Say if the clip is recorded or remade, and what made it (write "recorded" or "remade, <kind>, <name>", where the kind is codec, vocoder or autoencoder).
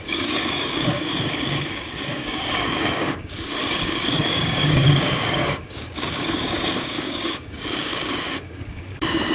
remade, codec, DAC